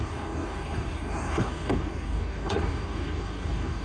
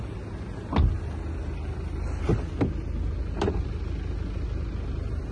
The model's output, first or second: first